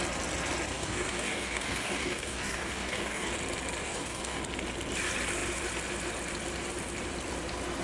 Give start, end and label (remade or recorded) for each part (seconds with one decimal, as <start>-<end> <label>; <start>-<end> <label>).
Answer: 0.0-0.7 recorded; 0.7-3.3 remade; 3.3-3.8 recorded; 3.8-4.4 remade; 4.4-7.8 recorded

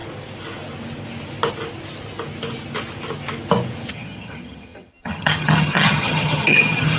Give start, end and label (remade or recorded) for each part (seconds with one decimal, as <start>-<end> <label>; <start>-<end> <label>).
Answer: 0.0-3.9 recorded; 3.9-7.0 remade

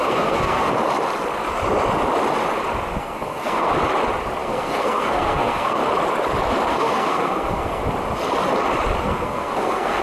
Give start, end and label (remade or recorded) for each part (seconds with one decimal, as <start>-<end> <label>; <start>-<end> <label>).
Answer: 0.0-0.7 remade; 0.7-3.0 recorded; 3.0-3.7 remade; 3.7-4.4 recorded; 4.4-5.8 remade; 5.8-6.7 recorded; 6.7-7.8 remade; 7.8-9.0 recorded; 9.0-10.0 remade